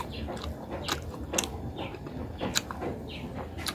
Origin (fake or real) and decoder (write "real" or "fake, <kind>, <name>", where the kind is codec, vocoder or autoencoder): real